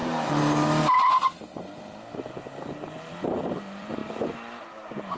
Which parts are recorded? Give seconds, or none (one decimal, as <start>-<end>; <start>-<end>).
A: 0.0-3.1; 4.0-4.6